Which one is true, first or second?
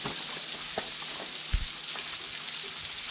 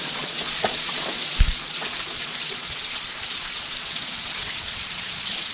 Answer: first